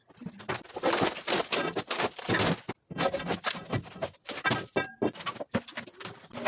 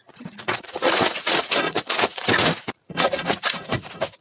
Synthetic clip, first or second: second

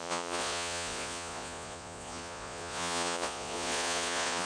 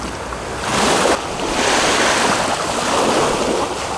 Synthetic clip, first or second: first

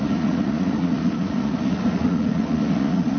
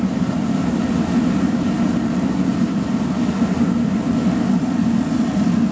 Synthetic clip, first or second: first